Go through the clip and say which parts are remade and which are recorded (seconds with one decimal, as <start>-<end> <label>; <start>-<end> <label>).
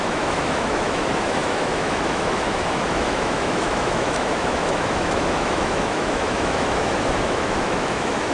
0.0-8.3 remade